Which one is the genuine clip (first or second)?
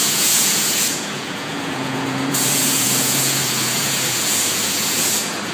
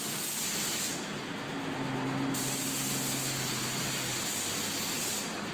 second